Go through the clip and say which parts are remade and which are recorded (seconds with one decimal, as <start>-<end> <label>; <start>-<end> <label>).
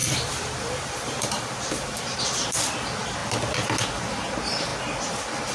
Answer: 0.0-2.2 remade; 2.2-5.5 recorded